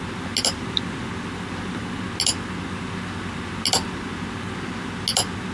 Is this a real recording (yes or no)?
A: yes